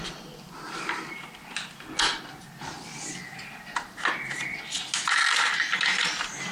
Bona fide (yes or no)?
yes